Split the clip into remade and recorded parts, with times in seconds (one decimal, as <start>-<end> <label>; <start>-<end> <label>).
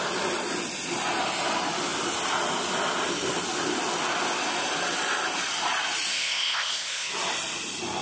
0.0-6.1 recorded; 6.1-7.1 remade; 7.1-8.0 recorded